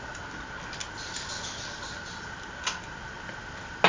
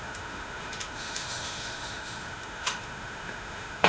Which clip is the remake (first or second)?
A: second